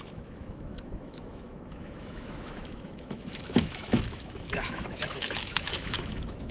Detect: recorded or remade remade